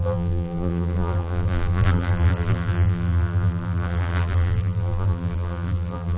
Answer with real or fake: fake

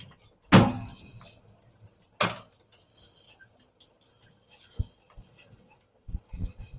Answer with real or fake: real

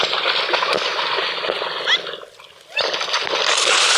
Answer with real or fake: real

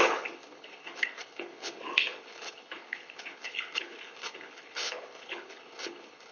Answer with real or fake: fake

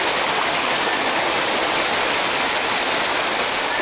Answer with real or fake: real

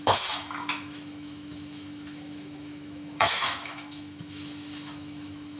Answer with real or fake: fake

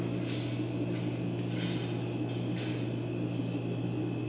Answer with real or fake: real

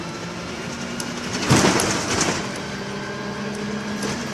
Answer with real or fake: real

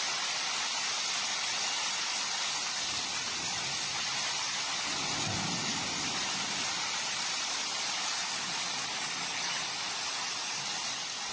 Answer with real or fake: real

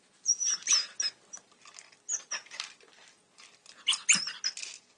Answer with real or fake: real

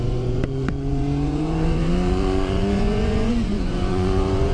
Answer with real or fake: fake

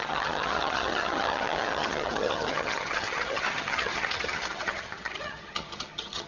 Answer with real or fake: fake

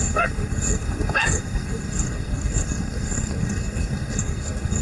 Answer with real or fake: fake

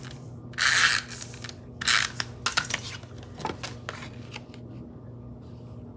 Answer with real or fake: real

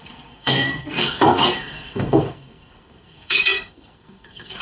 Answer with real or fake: fake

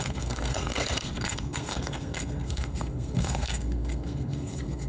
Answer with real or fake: fake